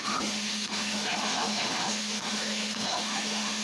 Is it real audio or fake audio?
fake